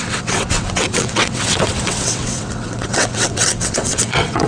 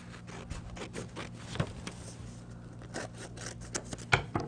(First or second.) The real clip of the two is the second